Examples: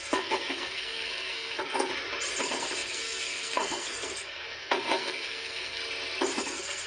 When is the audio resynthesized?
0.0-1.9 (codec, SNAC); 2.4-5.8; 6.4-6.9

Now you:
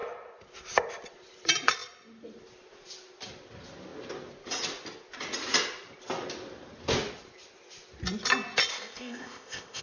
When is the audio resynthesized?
8.7-9.8 (codec, ZipCodec)

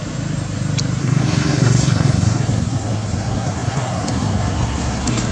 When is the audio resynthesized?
1.0-5.3 (codec, SNAC)

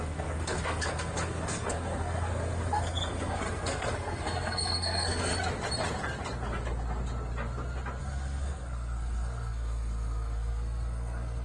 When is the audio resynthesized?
0.0-5.3 (codec, SNAC); 8.0-11.4